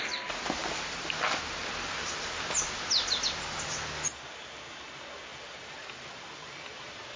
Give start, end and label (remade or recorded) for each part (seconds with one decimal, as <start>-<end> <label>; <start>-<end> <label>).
0.0-5.3 recorded; 5.3-7.2 remade